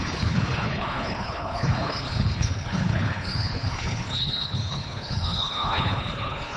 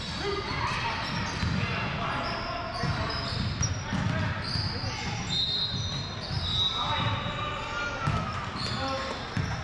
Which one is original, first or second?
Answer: second